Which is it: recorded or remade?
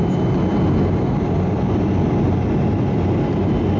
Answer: recorded